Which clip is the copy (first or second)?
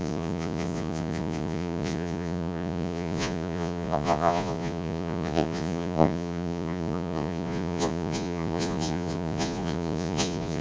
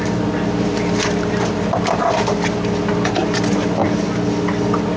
first